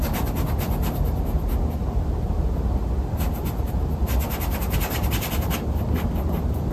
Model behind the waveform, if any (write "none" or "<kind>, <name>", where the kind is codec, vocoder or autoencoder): none